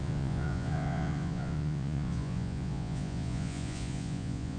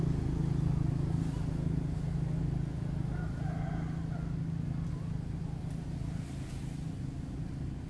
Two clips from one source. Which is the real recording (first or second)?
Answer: second